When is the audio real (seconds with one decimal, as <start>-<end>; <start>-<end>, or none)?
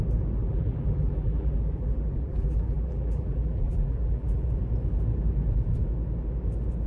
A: 0.0-0.4; 4.5-6.9